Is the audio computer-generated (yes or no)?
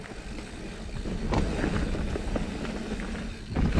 no